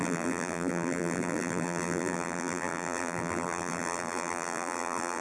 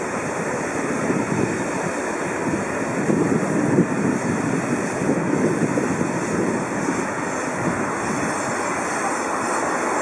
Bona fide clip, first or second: second